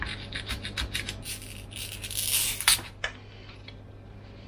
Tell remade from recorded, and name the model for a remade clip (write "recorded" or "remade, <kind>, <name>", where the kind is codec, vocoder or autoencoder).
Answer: recorded